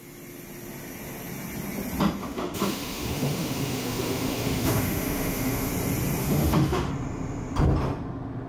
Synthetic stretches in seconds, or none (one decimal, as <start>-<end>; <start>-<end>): 2.2-5.7; 6.2-6.9